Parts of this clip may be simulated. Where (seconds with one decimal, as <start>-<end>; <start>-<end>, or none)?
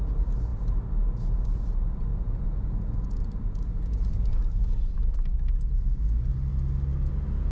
2.1-3.2